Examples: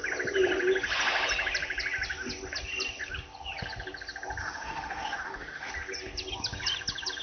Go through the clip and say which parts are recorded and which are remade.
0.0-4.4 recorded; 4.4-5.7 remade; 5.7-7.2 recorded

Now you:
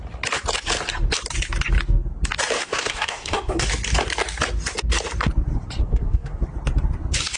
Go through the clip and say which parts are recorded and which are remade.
0.0-2.6 recorded; 2.6-3.7 remade; 3.7-5.8 recorded; 5.8-6.4 remade; 6.4-7.4 recorded

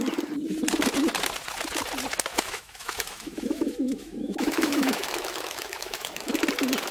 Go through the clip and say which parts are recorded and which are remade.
0.0-2.3 recorded; 2.3-6.4 remade; 6.4-6.9 recorded

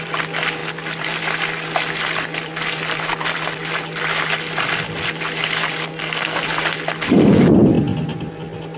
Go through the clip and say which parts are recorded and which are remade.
0.0-5.9 recorded; 5.9-6.4 remade; 6.4-8.8 recorded

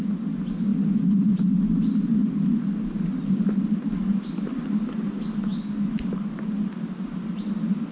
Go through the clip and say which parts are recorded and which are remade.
0.0-7.9 recorded

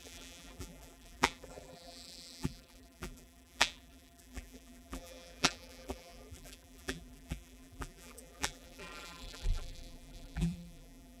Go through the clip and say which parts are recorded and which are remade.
0.0-11.2 remade

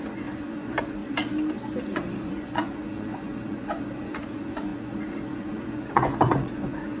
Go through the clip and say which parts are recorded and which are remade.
0.0-1.0 remade; 1.0-1.8 recorded; 1.8-7.0 remade

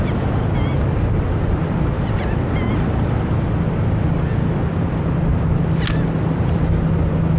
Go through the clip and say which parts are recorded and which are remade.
0.0-7.4 recorded